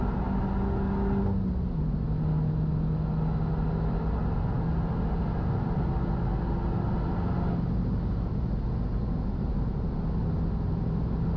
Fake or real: real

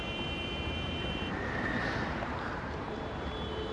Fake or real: fake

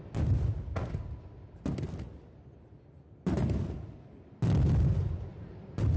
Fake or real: real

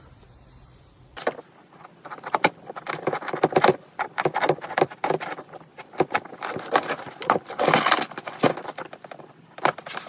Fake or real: fake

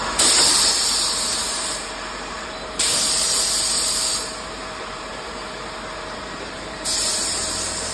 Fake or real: fake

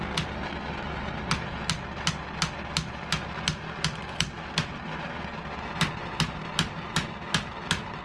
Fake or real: real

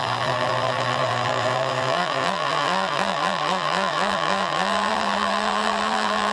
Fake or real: fake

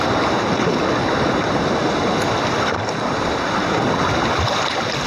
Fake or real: real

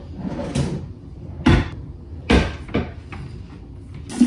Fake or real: fake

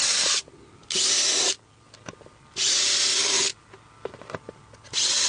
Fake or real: real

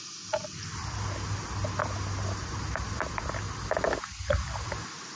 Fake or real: real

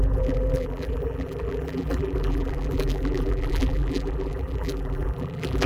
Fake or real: fake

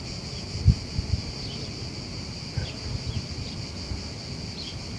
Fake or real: real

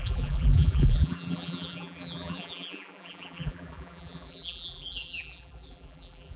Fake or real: fake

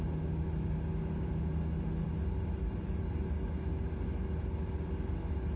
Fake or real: real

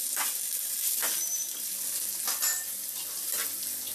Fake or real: real